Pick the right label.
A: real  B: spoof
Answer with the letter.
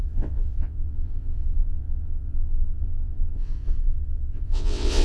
B